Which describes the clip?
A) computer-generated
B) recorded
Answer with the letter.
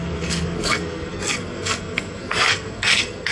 A